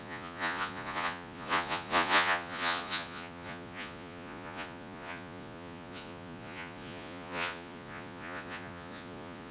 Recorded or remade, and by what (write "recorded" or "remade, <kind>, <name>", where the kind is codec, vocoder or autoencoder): remade, vocoder, Vocos